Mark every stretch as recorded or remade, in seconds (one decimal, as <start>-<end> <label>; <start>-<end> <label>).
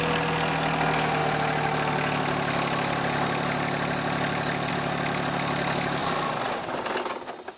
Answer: 0.0-7.6 recorded